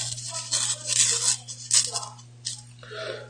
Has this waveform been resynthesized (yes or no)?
no